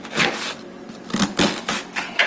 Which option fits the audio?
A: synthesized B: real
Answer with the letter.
B